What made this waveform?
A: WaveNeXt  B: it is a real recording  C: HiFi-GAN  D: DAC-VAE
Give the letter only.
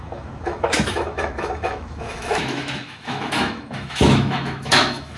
D